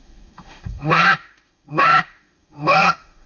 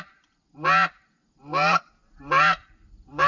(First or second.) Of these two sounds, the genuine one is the second